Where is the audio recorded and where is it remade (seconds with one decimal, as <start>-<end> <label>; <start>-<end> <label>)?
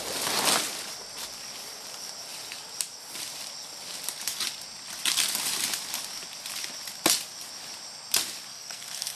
0.0-8.5 recorded; 8.5-9.2 remade